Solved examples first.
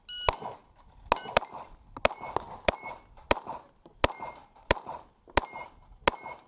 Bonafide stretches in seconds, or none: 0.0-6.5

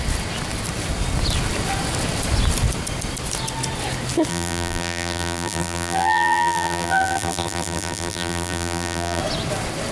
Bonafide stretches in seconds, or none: 0.0-4.3; 9.2-9.9

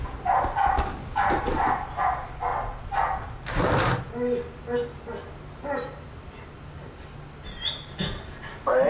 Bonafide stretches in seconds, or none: 0.0-2.5; 3.8-8.9

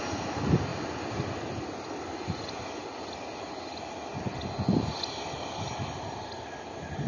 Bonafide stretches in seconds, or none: 0.0-7.1

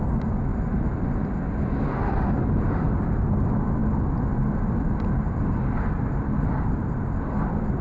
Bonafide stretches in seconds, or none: 0.0-0.5; 1.8-7.8